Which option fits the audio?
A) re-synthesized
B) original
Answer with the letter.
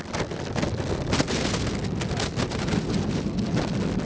B